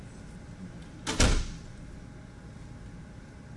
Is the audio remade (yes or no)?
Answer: no